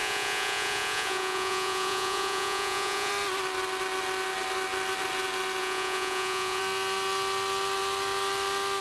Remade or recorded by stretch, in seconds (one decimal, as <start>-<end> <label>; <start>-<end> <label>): 0.0-3.1 remade; 3.1-5.6 recorded; 5.6-6.6 remade; 6.6-8.8 recorded